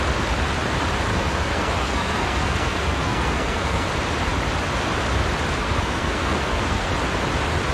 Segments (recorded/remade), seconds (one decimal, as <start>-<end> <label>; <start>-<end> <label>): 0.0-1.1 recorded; 1.1-3.9 remade; 3.9-5.6 recorded; 5.6-6.9 remade; 6.9-7.7 recorded

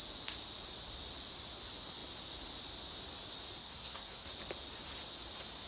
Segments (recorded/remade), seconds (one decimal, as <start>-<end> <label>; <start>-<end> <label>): 0.0-3.6 recorded; 3.6-4.3 remade; 4.3-5.7 recorded

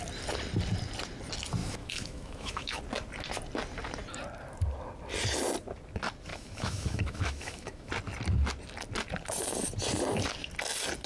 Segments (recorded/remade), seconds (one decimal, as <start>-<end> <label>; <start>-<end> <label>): 0.0-1.6 recorded; 1.6-2.8 remade; 2.8-6.3 recorded; 6.3-7.9 remade; 7.9-11.1 recorded

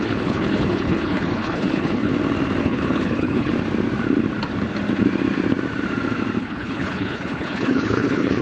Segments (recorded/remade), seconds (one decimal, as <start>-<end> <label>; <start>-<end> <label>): 0.0-2.1 remade; 2.1-2.6 recorded; 2.6-3.5 remade; 3.5-6.4 recorded; 6.4-8.4 remade

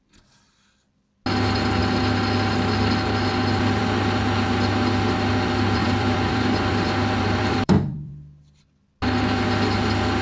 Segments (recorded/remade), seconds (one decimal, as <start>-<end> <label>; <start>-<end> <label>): 0.0-5.8 recorded; 5.8-8.6 remade; 8.6-10.2 recorded

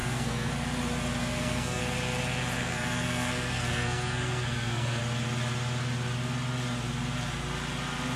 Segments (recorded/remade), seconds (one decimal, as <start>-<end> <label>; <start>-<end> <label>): 0.0-0.5 remade; 0.5-1.2 recorded; 1.2-1.8 remade; 1.8-2.6 recorded; 2.6-5.0 remade; 5.0-8.2 recorded